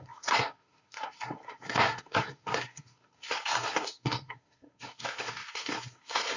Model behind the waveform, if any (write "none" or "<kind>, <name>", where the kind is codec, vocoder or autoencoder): codec, SNAC